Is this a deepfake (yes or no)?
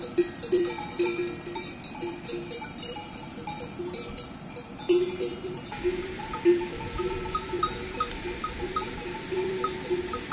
yes